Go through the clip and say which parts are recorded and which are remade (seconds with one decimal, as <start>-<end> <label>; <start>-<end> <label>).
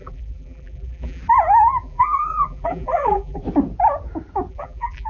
0.0-1.2 remade; 1.2-1.8 recorded; 1.8-3.4 remade; 3.4-4.5 recorded; 4.5-5.1 remade